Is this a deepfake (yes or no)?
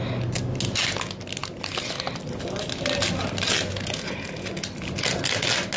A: no